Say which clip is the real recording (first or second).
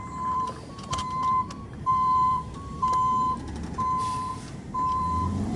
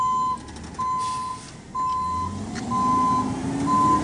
second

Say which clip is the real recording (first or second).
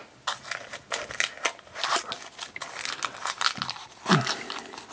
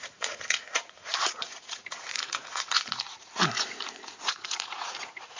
first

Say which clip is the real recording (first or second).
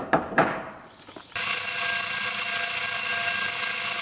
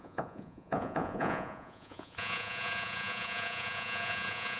first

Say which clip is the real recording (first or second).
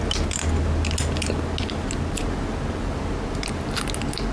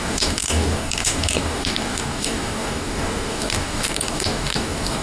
first